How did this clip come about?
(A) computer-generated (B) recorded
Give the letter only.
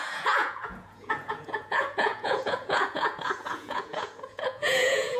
A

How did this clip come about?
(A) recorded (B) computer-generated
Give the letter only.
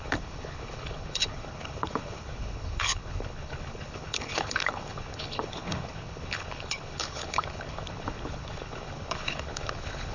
B